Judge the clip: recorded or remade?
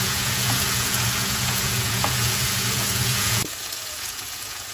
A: remade